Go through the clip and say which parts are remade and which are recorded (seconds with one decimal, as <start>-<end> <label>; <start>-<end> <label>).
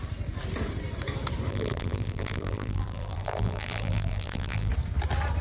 0.0-1.5 recorded; 1.5-4.7 remade; 4.7-5.4 recorded